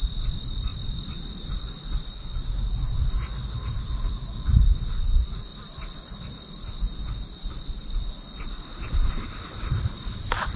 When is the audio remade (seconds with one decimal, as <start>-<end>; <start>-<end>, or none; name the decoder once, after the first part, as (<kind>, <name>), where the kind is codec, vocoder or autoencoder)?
0.0-10.6 (vocoder, BigVGAN v2)